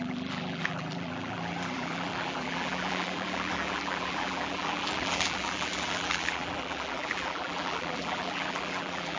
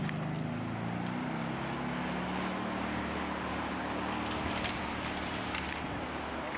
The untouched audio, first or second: second